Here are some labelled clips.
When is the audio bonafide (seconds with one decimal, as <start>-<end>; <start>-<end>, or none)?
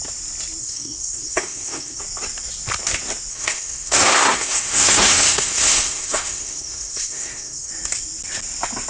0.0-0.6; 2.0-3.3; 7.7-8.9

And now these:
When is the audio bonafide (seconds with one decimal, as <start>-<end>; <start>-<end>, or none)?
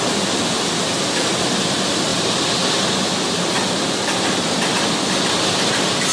0.0-6.1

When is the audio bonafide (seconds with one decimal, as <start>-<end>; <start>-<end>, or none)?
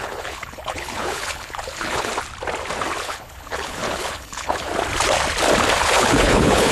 2.1-3.0; 4.7-5.8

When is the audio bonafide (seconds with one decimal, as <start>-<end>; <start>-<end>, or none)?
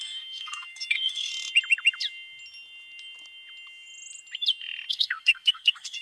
1.3-4.9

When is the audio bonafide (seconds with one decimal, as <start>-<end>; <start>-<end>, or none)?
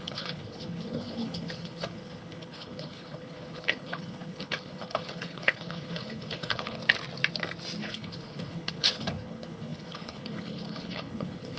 6.8-7.8